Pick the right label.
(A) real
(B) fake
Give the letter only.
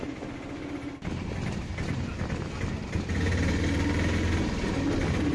A